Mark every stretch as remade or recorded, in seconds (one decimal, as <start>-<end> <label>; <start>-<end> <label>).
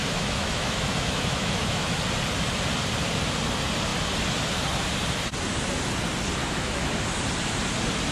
0.0-2.0 remade; 2.0-6.4 recorded; 6.4-6.9 remade; 6.9-8.1 recorded